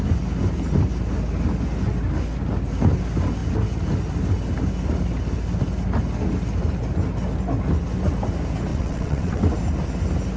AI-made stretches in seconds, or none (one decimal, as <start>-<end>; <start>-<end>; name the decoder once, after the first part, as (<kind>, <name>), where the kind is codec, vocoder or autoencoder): 8.7-9.4 (vocoder, WaveNeXt)